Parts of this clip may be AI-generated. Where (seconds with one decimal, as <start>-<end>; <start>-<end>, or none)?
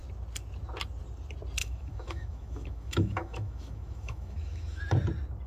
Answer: 1.6-4.8